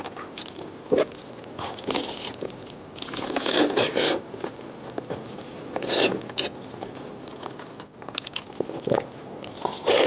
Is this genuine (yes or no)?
yes